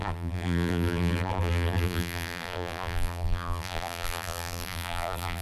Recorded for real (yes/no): no